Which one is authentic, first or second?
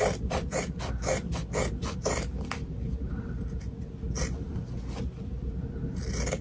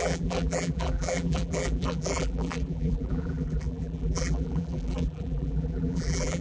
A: first